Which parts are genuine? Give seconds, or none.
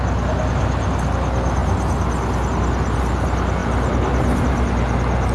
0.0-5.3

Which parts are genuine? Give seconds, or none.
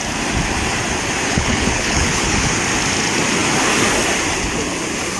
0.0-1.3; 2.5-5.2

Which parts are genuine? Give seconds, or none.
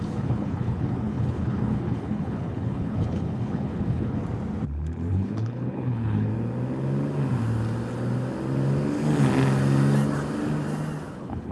4.2-5.1; 6.3-11.1